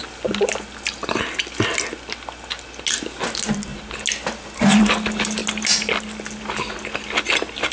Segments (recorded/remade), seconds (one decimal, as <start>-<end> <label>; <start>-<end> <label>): 0.0-7.7 recorded